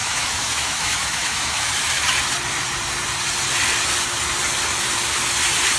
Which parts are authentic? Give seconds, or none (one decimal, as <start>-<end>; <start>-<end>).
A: 1.7-5.8